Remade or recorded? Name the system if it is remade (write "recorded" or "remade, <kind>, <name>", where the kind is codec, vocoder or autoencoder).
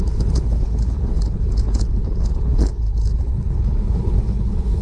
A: remade, codec, HILCodec